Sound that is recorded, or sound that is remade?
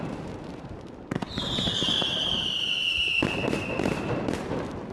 remade